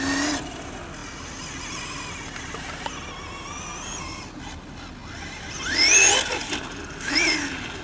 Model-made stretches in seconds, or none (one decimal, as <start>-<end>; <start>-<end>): none

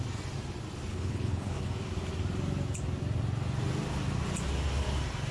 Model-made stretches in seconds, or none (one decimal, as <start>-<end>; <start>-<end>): 0.9-1.7

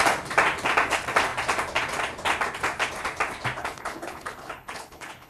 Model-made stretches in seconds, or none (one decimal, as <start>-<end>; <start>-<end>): 3.6-5.3

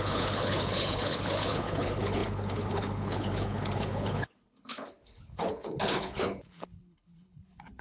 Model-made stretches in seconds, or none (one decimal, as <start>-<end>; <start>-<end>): 0.0-7.8

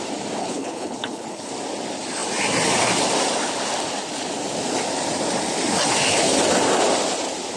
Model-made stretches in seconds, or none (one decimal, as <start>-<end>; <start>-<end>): 0.4-1.5

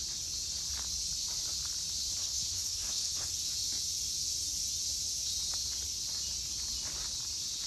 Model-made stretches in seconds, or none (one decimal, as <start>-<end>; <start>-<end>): 2.2-3.3